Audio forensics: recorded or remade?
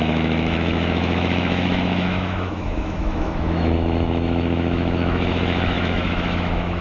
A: remade